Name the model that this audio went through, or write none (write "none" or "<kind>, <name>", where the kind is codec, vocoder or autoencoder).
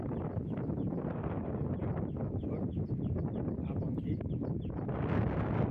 none